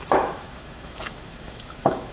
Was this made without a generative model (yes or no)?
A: no